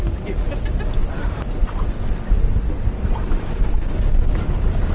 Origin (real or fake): real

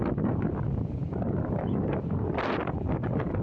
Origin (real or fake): real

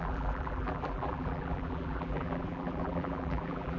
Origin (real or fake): fake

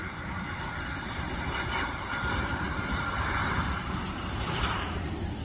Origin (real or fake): fake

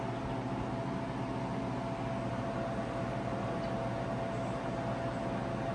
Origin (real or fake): real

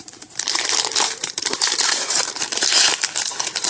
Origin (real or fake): fake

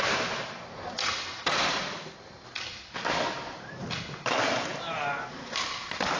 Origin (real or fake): real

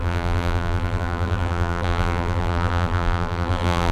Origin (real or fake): fake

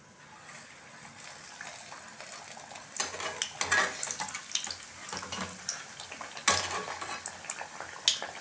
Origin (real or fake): real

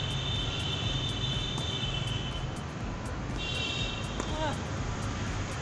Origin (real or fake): real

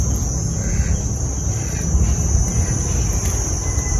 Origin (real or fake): real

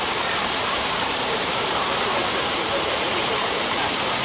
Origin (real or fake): fake